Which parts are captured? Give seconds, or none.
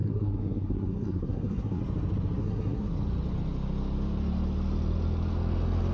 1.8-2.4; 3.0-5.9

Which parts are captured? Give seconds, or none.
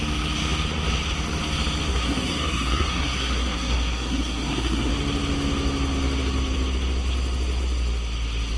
0.0-1.9; 4.9-8.6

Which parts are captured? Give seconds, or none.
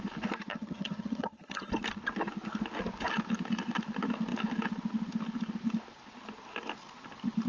0.0-0.5; 1.7-7.5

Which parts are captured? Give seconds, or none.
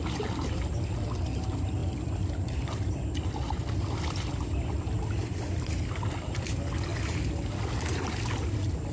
0.0-1.8; 4.5-8.9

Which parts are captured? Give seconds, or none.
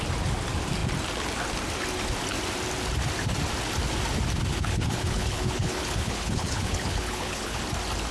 0.0-4.5; 7.6-8.1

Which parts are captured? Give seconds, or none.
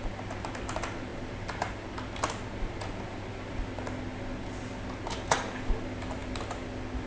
0.0-7.1